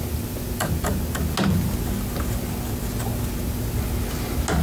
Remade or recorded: recorded